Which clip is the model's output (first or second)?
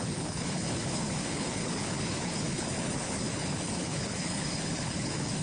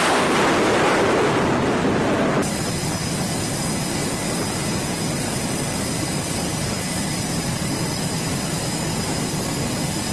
first